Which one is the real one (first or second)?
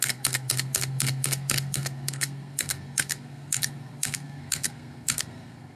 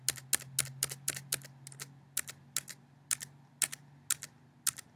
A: second